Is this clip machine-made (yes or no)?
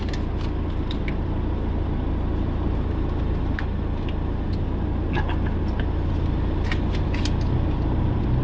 no